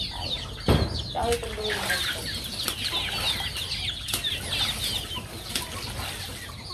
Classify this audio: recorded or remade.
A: recorded